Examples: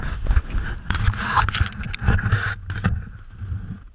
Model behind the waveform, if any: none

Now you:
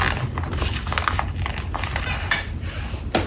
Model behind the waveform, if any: none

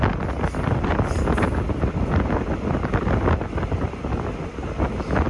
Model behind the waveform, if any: none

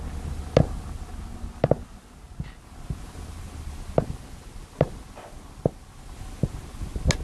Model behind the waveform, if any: none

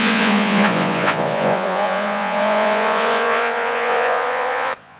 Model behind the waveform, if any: vocoder, Vocos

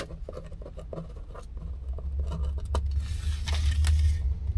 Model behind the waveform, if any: none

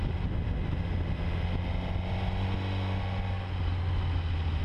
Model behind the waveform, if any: none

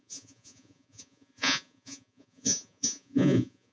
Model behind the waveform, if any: vocoder, Vocos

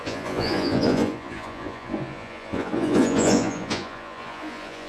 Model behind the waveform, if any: vocoder, Vocos